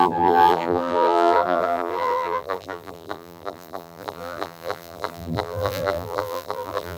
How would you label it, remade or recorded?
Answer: remade